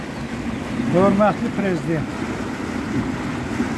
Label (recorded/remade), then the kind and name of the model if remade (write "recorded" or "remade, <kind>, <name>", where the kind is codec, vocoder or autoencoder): recorded